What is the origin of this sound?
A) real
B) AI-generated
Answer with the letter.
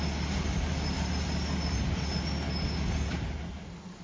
A